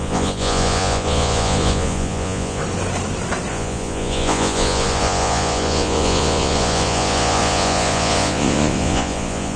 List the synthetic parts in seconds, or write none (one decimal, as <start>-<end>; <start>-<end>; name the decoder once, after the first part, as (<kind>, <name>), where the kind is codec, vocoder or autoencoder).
0.0-2.6 (vocoder, Vocos); 3.5-9.6